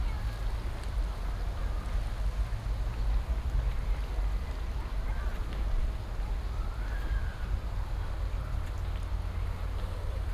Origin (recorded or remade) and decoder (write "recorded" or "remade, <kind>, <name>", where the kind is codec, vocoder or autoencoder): recorded